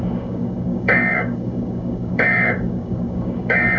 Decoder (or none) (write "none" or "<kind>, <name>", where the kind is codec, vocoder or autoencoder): codec, DAC